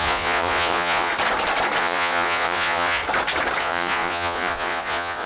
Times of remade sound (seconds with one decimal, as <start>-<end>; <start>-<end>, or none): 0.0-1.1; 1.8-3.0; 3.6-5.3